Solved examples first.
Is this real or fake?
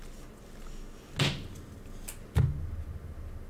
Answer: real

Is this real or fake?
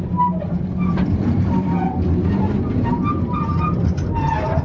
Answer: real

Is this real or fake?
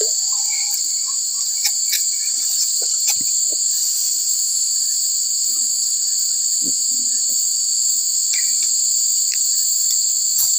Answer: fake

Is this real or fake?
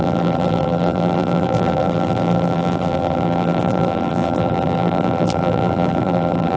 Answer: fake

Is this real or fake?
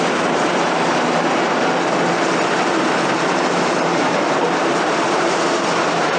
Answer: fake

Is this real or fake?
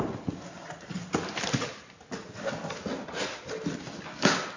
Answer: real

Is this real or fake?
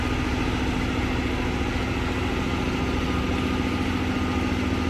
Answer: real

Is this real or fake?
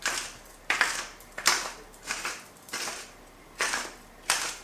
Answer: fake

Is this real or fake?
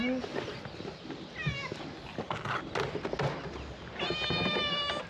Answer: real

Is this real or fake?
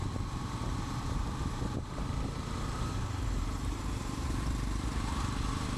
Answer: fake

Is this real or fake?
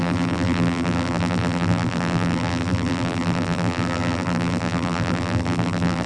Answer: fake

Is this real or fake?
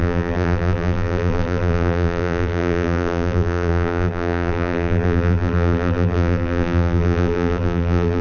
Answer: fake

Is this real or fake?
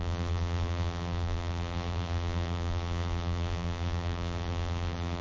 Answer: fake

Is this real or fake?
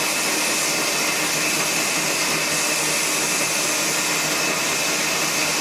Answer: real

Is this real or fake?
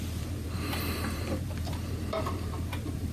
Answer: fake